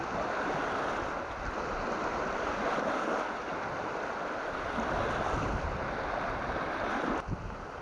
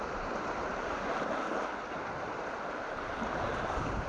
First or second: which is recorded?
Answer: first